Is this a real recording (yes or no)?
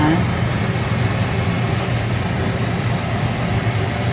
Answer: yes